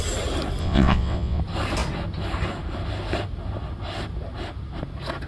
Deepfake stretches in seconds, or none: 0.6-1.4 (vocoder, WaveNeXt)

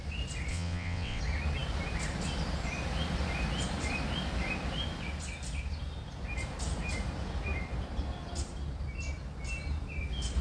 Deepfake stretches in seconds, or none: 0.5-1.2 (vocoder, WaveNeXt)

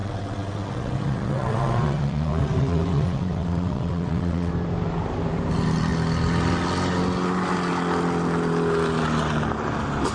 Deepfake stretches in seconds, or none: 0.0-4.5 (vocoder, WaveNeXt)

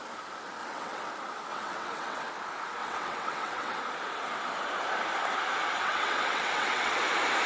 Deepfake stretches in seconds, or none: 0.6-1.1 (vocoder, WaveNeXt); 1.5-2.3; 2.8-3.8; 5.8-7.0

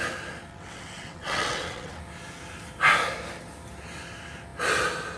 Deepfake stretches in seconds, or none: 0.5-2.0 (vocoder, WaveNeXt)

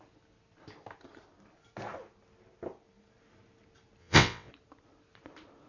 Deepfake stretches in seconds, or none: 4.0-4.5 (vocoder, WaveNeXt)